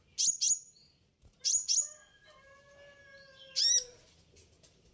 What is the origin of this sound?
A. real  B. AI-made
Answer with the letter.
A